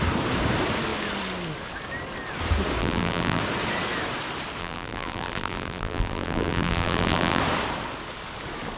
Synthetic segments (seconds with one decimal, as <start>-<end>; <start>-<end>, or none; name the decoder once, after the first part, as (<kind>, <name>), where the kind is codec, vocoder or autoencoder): 2.8-3.4 (vocoder, BigVGAN v2); 4.6-7.4

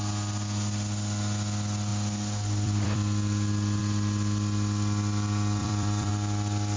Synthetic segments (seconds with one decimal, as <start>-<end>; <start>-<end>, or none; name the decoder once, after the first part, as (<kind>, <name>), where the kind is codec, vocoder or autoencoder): 1.9-3.8 (vocoder, BigVGAN v2); 5.6-6.1